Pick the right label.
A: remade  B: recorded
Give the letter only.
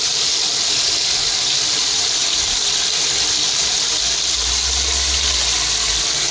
B